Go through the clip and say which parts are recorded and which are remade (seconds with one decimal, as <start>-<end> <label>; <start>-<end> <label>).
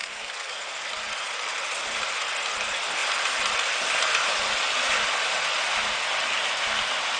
0.0-0.5 remade; 0.5-7.2 recorded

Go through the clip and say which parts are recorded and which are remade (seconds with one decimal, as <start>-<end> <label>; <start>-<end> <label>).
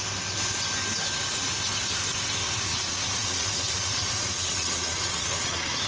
0.0-2.7 recorded; 2.7-5.9 remade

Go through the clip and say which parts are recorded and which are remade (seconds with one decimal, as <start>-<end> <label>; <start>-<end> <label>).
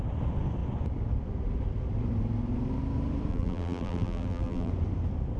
0.0-3.3 recorded; 3.3-4.7 remade; 4.7-5.4 recorded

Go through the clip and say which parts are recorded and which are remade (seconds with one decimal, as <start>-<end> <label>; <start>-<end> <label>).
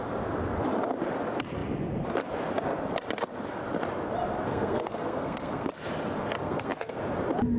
0.0-4.5 recorded; 4.5-5.7 remade; 5.7-6.4 recorded; 6.4-7.0 remade; 7.0-7.6 recorded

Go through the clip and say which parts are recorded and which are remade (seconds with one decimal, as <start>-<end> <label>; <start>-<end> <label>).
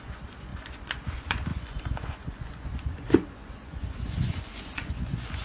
0.0-5.4 remade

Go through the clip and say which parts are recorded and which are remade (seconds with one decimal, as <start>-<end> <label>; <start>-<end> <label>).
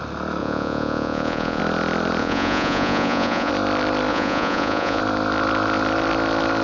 0.0-0.4 recorded; 0.4-1.6 remade; 1.6-2.2 recorded; 2.2-3.5 remade; 3.5-4.1 recorded; 4.1-5.0 remade; 5.0-6.6 recorded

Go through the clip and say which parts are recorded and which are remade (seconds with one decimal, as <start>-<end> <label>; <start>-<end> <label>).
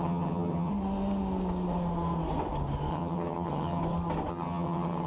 0.0-0.7 remade; 0.7-2.9 recorded; 2.9-3.8 remade; 3.8-4.3 recorded; 4.3-5.1 remade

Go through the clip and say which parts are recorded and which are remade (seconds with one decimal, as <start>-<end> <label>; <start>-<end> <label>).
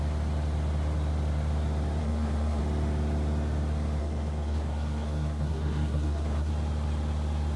0.0-2.0 recorded; 2.0-2.6 remade; 2.6-4.0 recorded; 4.0-6.5 remade; 6.5-7.6 recorded